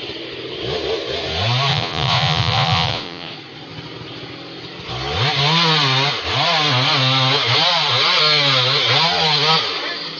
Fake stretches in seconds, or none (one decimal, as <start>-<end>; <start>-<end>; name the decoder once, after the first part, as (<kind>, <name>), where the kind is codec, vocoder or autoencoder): 1.7-3.3 (vocoder, Vocos)